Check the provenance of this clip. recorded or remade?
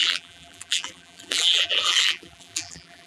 remade